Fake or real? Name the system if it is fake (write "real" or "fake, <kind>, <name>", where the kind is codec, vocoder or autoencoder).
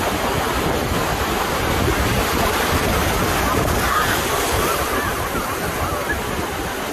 real